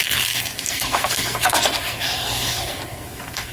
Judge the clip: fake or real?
fake